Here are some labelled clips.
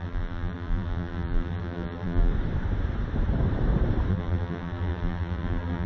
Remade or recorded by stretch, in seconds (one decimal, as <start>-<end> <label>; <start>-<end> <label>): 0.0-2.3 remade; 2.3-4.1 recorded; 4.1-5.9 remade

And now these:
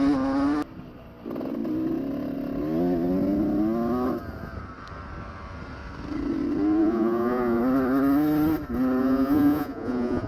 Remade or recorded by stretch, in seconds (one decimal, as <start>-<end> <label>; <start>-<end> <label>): 0.0-6.8 recorded; 6.8-7.6 remade; 7.6-9.0 recorded; 9.0-10.3 remade

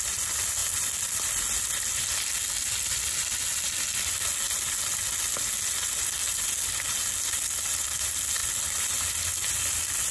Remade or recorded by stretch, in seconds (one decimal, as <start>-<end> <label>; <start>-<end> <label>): 0.0-10.1 recorded

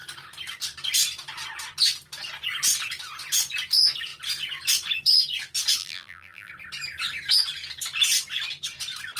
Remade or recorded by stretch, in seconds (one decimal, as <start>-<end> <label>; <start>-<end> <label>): 0.0-5.8 recorded; 5.8-6.5 remade; 6.5-9.2 recorded